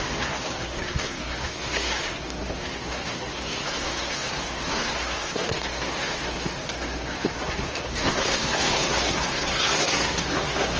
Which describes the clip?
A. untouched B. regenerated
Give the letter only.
B